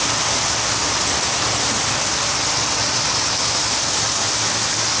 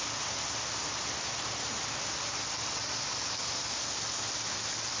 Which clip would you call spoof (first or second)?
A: first